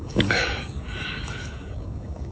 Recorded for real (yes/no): no